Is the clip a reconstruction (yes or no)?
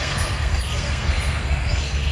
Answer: yes